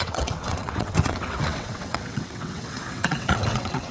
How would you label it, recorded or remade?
remade